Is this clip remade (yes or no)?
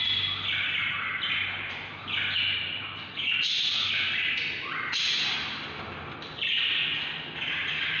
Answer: no